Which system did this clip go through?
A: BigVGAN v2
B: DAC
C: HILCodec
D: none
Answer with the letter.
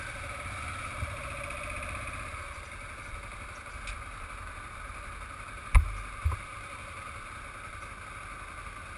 D